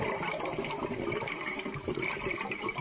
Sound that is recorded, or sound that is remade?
recorded